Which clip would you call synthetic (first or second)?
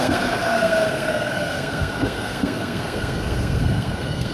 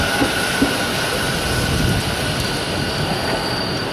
first